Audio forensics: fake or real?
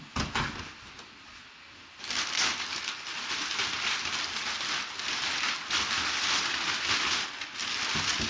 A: real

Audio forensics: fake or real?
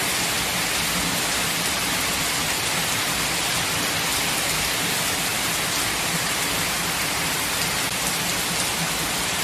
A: real